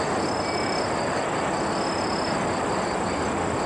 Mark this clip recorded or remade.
recorded